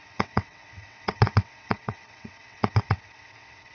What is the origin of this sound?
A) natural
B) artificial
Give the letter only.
B